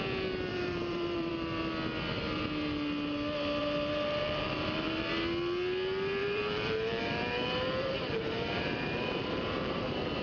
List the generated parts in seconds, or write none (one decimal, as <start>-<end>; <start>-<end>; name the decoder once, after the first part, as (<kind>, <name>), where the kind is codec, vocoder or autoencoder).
0.5-1.3 (vocoder, BigVGAN v2); 3.6-5.1; 6.2-10.2